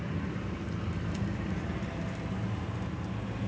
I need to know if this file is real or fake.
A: real